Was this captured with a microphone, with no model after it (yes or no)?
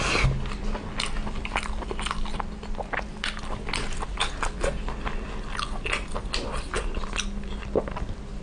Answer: yes